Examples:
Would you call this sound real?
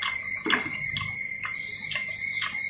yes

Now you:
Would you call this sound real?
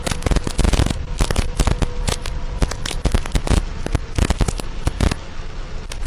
yes